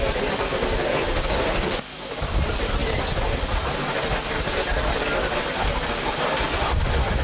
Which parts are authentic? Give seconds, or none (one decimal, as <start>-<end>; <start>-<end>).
0.0-1.9; 2.4-7.2